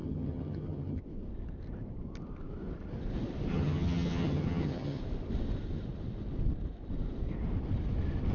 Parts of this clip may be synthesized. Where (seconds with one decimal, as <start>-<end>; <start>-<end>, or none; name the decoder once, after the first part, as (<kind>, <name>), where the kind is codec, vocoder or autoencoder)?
0.0-1.0 (vocoder, HiFi-GAN); 3.5-5.0